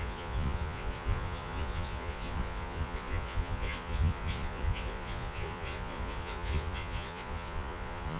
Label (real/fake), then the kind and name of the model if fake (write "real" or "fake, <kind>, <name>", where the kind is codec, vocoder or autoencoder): fake, vocoder, Vocos